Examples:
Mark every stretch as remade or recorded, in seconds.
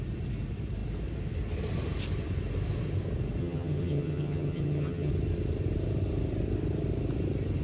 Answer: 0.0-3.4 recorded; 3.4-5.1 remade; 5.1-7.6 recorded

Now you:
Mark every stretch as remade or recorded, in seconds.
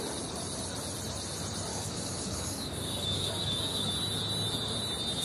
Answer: 0.0-1.7 recorded; 1.7-3.9 remade; 3.9-5.2 recorded